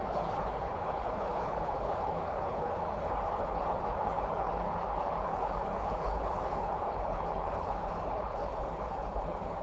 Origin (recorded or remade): remade